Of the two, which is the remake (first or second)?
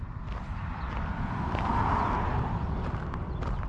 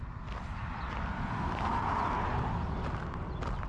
first